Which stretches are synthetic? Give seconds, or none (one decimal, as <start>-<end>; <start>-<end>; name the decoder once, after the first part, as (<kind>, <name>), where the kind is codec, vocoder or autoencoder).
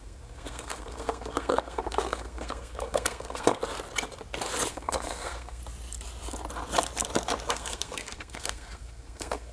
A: 0.0-3.6 (codec, SNAC); 4.7-5.6; 7.5-9.5